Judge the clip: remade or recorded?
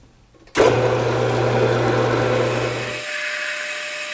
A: recorded